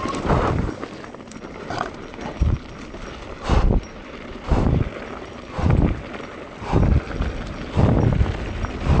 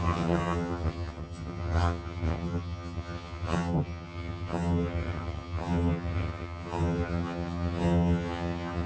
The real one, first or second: first